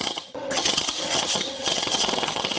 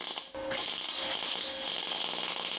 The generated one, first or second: first